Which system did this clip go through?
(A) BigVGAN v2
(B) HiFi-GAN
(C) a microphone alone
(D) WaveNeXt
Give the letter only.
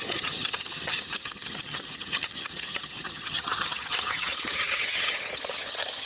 B